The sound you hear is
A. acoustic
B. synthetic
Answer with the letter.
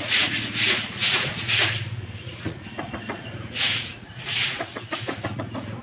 B